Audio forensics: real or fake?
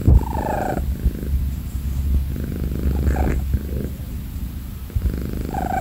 real